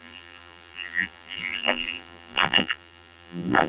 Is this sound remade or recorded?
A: remade